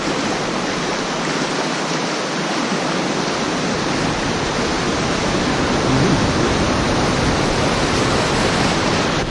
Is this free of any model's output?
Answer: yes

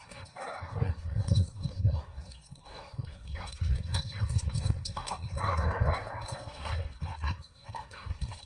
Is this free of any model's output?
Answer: no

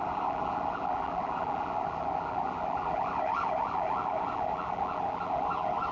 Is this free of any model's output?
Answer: no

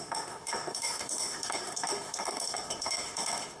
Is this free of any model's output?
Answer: no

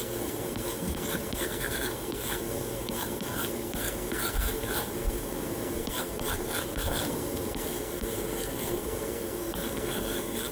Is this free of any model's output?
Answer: no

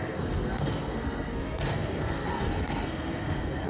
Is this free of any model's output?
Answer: no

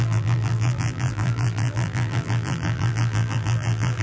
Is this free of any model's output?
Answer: no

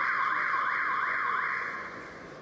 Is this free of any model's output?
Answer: no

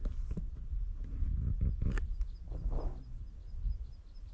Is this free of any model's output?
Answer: yes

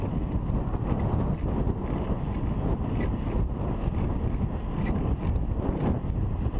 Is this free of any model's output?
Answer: yes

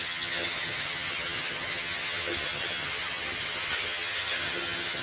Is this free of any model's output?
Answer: no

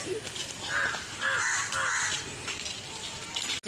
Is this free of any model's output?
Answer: yes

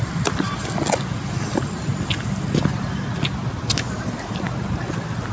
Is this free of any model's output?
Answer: yes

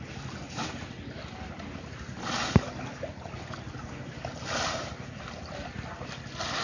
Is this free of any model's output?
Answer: yes